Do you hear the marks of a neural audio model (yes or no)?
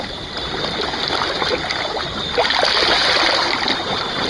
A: no